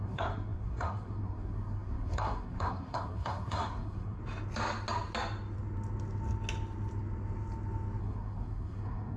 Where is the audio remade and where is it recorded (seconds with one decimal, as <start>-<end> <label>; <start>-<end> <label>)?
0.0-4.2 remade; 4.2-8.0 recorded; 8.0-9.2 remade